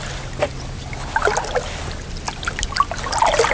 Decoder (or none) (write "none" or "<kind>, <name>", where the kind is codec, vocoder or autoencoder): none